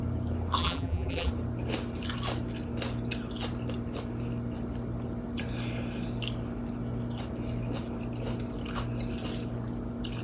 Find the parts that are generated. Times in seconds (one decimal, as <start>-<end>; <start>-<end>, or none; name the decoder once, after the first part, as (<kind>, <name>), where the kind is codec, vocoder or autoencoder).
0.6-1.3 (vocoder, BigVGAN v2)